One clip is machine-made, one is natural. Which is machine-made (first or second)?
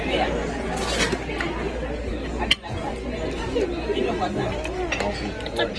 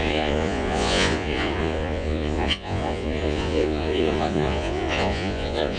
second